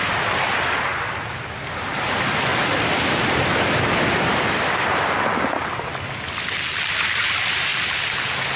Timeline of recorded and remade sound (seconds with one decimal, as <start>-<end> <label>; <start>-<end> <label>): 0.0-8.6 recorded